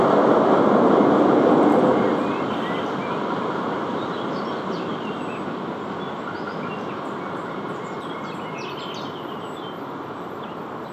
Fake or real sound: real